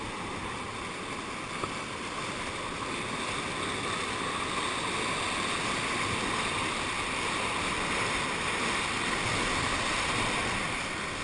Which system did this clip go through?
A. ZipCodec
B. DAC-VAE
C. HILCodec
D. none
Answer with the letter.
D